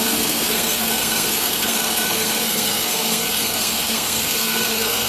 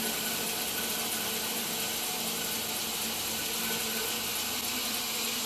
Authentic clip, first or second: second